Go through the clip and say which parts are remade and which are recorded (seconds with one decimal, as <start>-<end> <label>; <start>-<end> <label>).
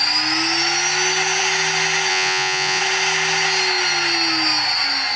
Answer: 0.0-2.1 recorded; 2.1-2.8 remade; 2.8-5.2 recorded